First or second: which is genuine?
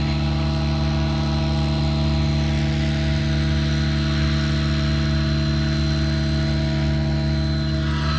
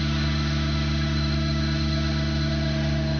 first